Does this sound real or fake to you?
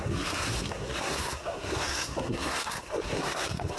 fake